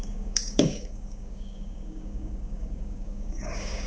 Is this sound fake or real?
fake